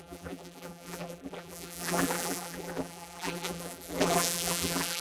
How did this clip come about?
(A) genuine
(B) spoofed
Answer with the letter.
B